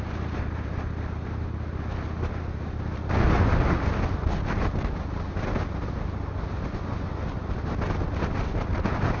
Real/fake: real